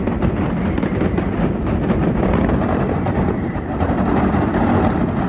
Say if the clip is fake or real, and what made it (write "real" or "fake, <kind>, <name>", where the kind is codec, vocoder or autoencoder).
fake, vocoder, BigVGAN v2